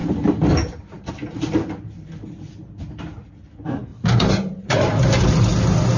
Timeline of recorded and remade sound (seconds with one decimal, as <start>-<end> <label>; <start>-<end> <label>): 0.0-1.1 remade; 1.1-3.9 recorded; 3.9-4.8 remade; 4.8-6.0 recorded